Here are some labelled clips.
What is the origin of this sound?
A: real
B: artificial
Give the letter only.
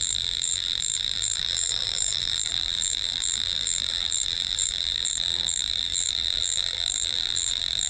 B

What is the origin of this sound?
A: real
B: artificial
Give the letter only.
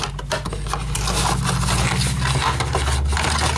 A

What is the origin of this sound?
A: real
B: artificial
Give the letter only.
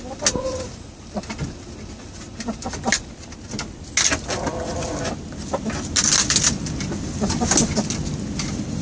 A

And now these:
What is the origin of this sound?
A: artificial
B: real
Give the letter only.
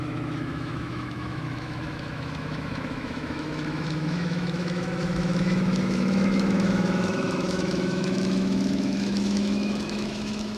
A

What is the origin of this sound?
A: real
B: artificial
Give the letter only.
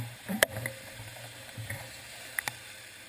B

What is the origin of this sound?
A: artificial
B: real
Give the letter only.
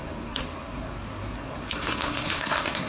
A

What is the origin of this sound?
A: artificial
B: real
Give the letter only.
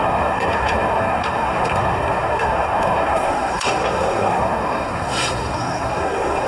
A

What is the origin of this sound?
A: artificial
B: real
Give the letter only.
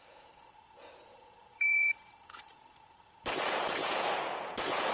A